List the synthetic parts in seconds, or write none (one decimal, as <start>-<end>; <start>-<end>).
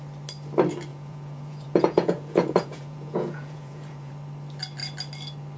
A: 0.9-4.1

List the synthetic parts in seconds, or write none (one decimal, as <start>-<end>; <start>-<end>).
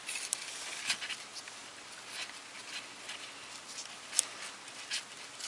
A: none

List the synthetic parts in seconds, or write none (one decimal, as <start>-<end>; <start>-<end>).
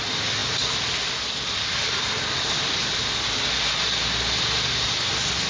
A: none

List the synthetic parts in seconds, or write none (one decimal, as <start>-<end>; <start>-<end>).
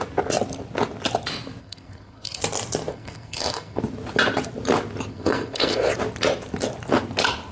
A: 1.6-2.4; 2.9-3.8; 5.1-5.9